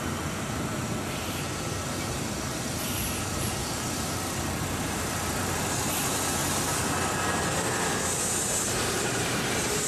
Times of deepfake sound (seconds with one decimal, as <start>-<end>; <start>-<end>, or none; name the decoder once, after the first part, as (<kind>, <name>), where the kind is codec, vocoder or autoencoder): 0.0-6.4 (vocoder, BigVGAN v2); 8.5-9.9